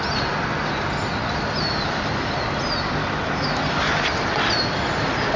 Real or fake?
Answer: real